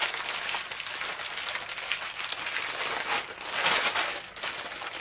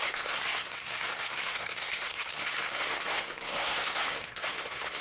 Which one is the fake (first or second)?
second